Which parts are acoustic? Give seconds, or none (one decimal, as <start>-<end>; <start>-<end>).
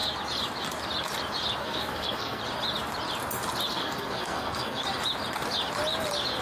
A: 0.0-1.6; 2.4-3.7; 4.8-6.4